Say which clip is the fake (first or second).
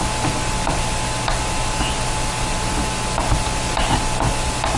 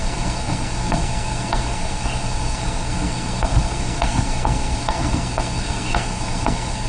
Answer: second